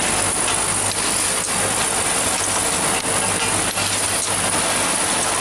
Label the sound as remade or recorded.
recorded